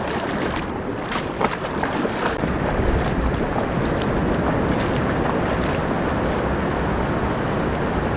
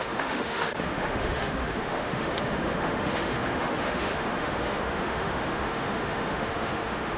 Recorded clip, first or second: first